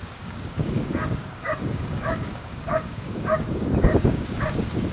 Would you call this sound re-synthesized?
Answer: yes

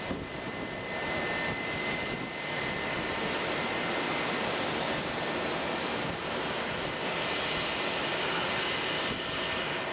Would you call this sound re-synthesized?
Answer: no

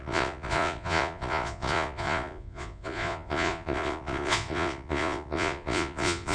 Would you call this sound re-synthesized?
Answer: yes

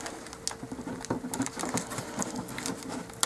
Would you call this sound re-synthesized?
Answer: no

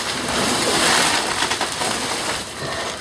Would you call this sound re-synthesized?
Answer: no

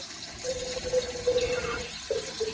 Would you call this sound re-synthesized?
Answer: no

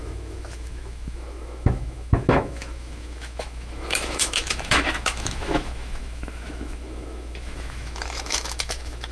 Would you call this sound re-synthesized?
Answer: yes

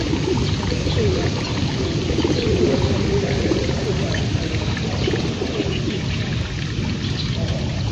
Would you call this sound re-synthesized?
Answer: no